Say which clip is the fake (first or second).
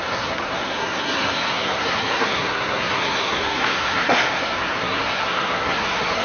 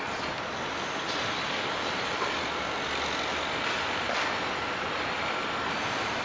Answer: first